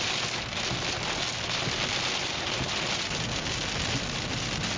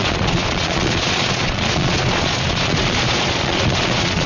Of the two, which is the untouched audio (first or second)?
first